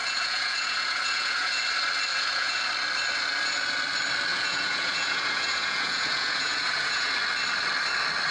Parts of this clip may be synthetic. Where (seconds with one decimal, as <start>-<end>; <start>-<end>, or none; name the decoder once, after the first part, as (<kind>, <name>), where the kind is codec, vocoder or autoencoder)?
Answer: 0.0-1.6 (vocoder, Vocos); 2.1-2.6; 4.3-7.1